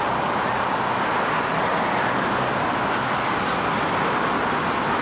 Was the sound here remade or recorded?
recorded